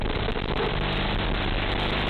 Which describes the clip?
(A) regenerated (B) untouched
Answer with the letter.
B